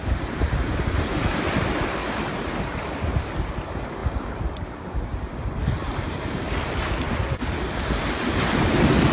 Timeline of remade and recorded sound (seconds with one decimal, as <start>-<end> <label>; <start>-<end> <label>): 0.0-9.1 recorded